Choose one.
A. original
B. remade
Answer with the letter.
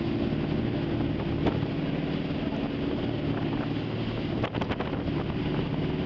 A